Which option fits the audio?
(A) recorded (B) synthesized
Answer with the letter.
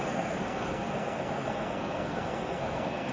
B